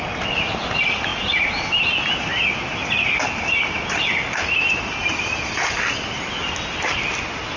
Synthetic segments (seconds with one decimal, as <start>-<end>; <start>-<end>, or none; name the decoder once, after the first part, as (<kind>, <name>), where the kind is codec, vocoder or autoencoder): 1.1-1.7 (vocoder, Vocos)